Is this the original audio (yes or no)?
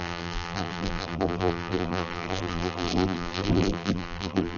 no